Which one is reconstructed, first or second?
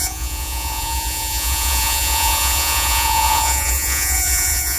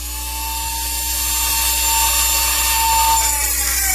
first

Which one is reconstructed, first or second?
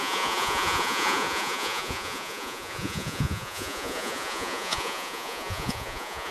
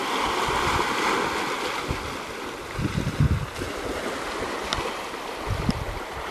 first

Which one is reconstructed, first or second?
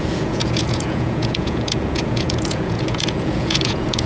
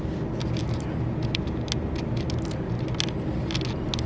first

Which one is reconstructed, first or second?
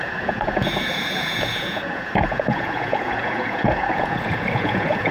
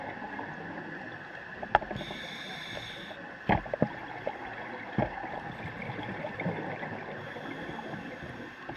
first